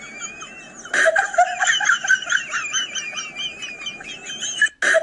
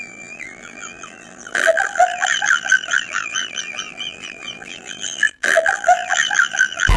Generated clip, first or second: second